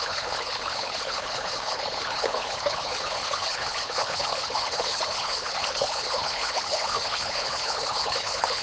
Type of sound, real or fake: fake